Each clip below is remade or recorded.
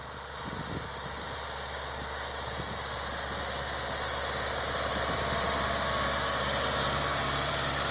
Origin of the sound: recorded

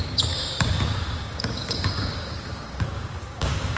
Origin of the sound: remade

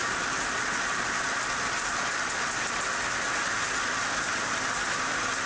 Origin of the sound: recorded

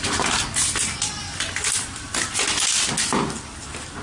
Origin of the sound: recorded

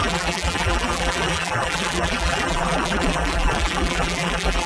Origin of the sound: remade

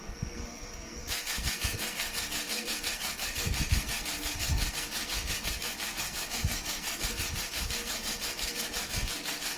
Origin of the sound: remade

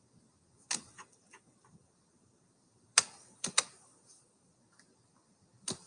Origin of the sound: recorded